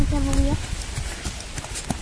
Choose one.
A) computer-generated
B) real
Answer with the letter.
B